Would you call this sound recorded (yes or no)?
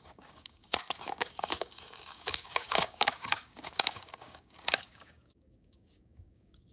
no